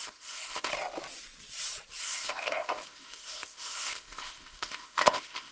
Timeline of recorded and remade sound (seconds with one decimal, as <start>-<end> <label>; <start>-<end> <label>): 0.0-0.7 remade; 0.7-2.0 recorded; 2.0-5.5 remade